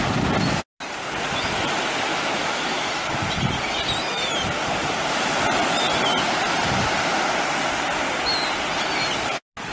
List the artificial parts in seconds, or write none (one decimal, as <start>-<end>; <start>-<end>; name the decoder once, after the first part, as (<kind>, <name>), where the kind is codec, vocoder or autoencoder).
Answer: 2.1-3.1 (autoencoder, DAC-VAE)